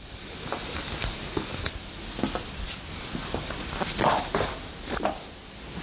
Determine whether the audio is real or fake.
real